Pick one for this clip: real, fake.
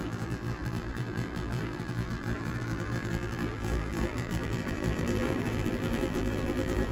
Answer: fake